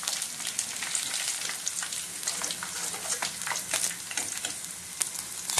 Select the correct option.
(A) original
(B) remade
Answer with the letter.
A